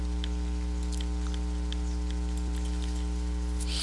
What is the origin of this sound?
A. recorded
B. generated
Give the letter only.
A